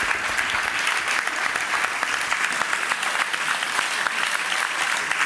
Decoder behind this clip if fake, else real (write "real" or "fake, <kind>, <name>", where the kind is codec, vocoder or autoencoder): real